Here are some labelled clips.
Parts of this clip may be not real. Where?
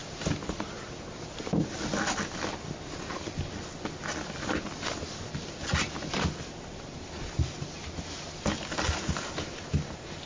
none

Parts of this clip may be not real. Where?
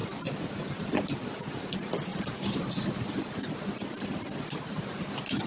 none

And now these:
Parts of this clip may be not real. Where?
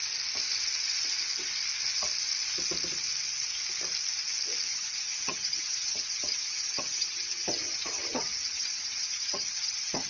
4.7-10.1 (vocoder, HiFi-GAN)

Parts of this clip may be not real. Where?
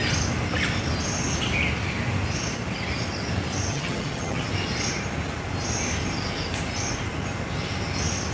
3.7-4.5 (vocoder, HiFi-GAN)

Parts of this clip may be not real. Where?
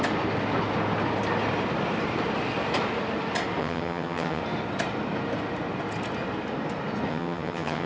3.6-4.4 (vocoder, HiFi-GAN); 7.1-7.9